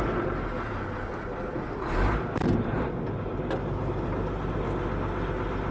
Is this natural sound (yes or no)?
yes